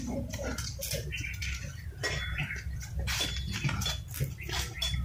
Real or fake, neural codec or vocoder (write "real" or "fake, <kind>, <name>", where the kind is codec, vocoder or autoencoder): real